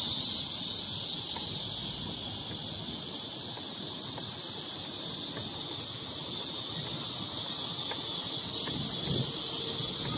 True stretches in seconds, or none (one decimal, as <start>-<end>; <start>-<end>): 0.0-10.2